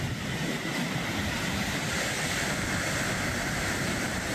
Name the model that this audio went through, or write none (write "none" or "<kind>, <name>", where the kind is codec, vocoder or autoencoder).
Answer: vocoder, BigVGAN v2